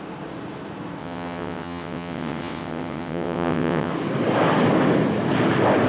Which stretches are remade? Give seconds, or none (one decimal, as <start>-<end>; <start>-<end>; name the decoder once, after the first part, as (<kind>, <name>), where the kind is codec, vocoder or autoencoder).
1.0-3.9 (vocoder, WaveNeXt)